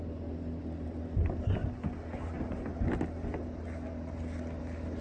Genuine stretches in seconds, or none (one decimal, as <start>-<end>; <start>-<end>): 0.0-5.0